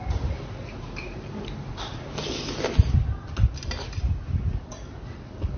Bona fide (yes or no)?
yes